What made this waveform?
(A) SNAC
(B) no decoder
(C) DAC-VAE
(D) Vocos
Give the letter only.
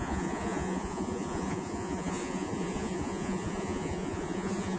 D